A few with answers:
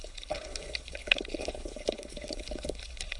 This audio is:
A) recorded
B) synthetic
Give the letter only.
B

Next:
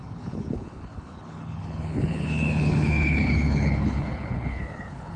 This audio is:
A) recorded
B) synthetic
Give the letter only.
B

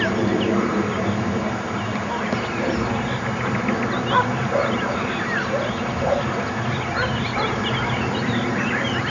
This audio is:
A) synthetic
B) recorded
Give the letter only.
B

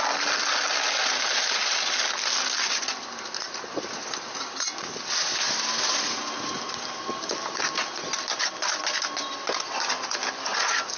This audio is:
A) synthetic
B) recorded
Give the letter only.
B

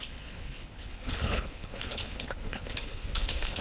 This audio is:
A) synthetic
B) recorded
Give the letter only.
A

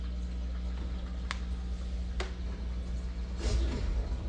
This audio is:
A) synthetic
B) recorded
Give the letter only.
B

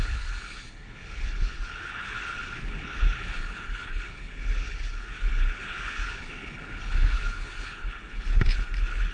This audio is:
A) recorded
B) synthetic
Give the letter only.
B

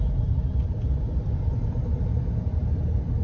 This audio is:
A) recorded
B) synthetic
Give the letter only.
A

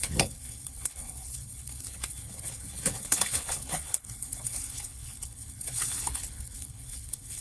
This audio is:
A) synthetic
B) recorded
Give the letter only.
A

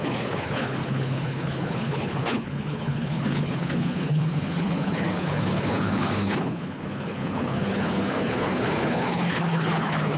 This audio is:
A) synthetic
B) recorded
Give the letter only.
A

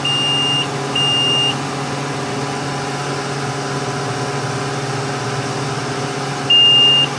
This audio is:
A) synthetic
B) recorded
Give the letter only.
B